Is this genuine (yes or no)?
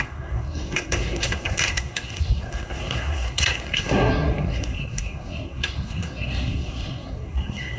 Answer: no